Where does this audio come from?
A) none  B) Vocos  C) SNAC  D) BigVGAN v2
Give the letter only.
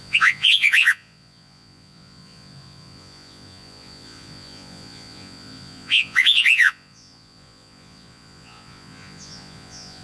B